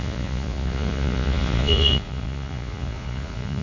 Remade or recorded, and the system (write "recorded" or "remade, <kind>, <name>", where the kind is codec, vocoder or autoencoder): remade, vocoder, Vocos